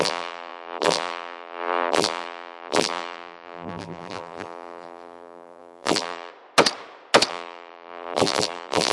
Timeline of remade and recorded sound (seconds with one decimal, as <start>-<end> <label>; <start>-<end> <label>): 0.0-6.3 remade; 6.3-7.3 recorded; 7.3-8.9 remade